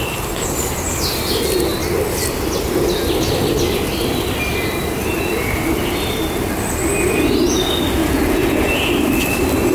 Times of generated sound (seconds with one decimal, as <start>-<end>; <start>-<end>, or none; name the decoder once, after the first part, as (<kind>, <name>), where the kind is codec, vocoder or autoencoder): 8.0-8.9 (vocoder, Vocos)